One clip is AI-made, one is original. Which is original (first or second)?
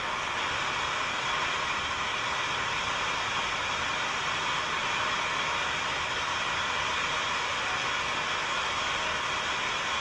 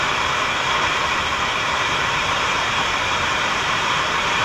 first